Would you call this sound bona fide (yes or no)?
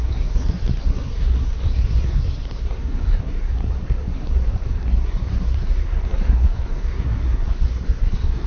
no